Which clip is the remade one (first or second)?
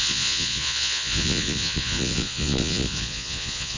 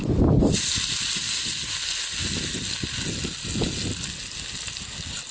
first